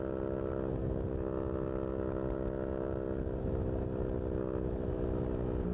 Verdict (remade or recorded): recorded